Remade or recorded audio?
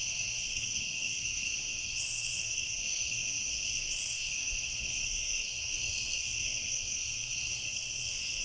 remade